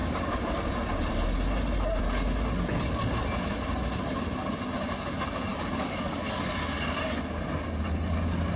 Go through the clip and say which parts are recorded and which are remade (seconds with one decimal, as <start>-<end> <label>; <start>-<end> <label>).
0.0-5.5 recorded; 5.5-7.0 remade; 7.0-8.6 recorded